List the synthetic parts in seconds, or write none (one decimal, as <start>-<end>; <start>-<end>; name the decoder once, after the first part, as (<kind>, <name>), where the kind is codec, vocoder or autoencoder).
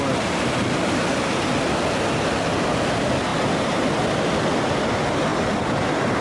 none